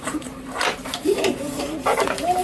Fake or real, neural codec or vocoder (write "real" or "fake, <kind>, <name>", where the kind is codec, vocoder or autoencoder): fake, vocoder, BigVGAN v2